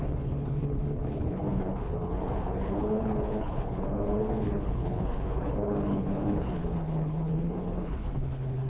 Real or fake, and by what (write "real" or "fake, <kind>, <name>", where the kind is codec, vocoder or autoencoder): fake, codec, HILCodec